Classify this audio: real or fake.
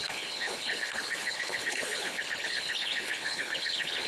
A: fake